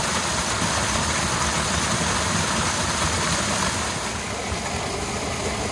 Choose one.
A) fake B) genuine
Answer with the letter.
B